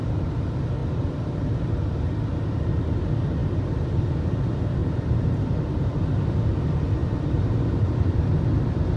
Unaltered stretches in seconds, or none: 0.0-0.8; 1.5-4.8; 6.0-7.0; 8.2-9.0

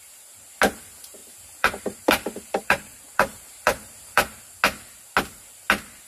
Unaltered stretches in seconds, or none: 0.0-1.2; 4.4-6.1

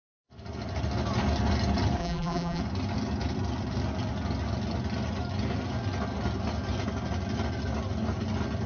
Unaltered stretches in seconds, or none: 0.0-2.0; 2.6-8.7

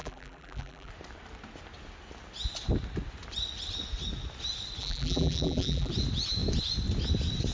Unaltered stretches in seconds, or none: 0.9-4.8; 5.9-7.5